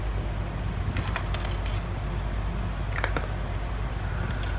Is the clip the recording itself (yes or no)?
yes